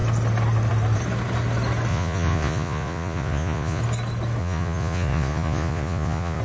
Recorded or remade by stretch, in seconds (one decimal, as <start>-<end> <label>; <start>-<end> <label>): 0.0-1.9 recorded; 1.9-3.8 remade; 3.8-4.4 recorded; 4.4-6.4 remade